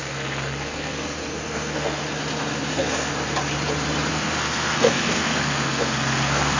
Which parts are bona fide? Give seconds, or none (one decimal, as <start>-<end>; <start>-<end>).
2.0-2.7; 3.1-4.1

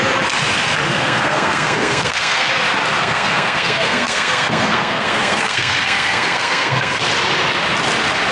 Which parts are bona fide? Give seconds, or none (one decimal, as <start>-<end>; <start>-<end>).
0.0-0.9; 2.5-3.0; 7.0-8.3

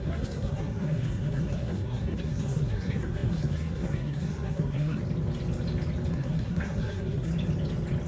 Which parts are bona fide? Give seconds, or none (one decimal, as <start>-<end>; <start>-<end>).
5.0-6.1; 7.3-8.1